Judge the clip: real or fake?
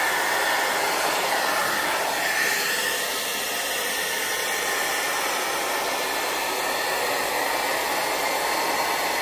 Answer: real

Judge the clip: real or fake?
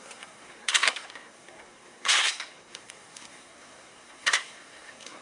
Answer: fake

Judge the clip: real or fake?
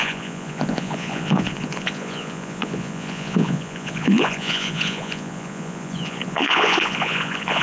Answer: fake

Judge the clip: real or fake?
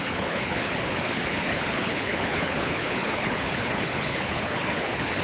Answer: fake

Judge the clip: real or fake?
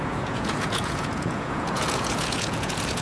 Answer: fake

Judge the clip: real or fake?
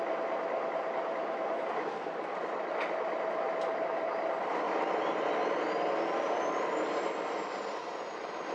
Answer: real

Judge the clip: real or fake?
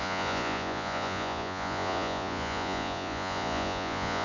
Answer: fake